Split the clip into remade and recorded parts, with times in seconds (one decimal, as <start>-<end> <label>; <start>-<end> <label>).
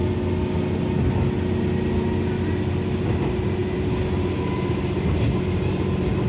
0.0-6.3 recorded